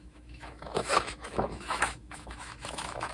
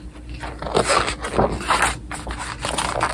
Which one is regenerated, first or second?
first